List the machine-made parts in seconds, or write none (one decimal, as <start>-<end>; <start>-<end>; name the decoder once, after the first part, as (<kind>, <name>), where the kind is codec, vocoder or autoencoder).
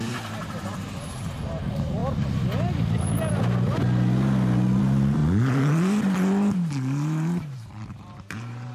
0.0-2.0 (vocoder, BigVGAN v2); 4.8-5.2; 6.7-8.7